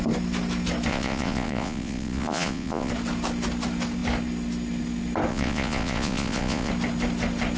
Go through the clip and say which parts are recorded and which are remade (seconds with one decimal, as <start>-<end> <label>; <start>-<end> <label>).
0.0-0.9 recorded; 0.9-2.9 remade; 2.9-5.3 recorded; 5.3-6.7 remade; 6.7-7.6 recorded

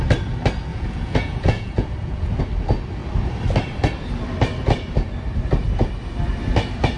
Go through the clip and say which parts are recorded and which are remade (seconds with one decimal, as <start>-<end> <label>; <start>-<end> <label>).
0.0-0.7 recorded; 0.7-2.4 remade; 2.4-7.0 recorded